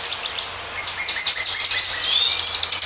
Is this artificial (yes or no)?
no